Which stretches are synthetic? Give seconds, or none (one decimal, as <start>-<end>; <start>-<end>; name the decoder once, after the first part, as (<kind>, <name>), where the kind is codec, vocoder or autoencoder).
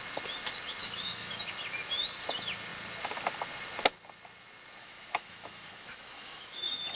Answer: 0.8-1.3 (autoencoder, DAC-VAE); 4.8-6.5